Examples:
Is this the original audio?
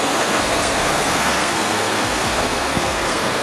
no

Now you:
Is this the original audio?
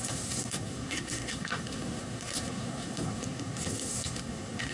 no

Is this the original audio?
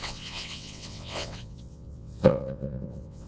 no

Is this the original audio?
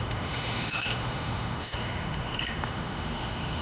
no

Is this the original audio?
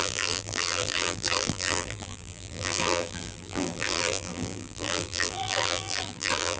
no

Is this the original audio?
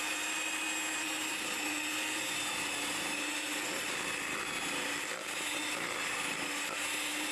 yes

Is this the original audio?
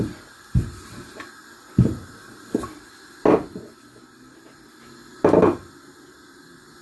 yes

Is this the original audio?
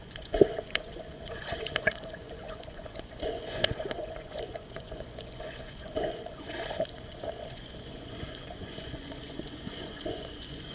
no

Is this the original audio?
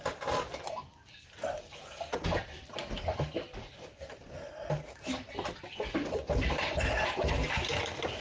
yes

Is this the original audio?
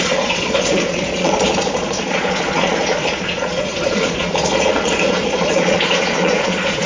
no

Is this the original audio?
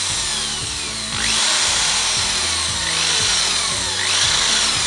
yes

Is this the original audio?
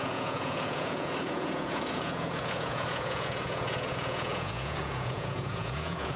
no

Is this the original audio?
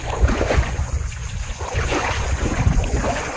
no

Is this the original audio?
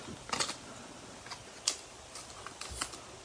yes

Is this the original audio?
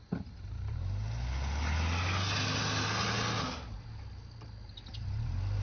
yes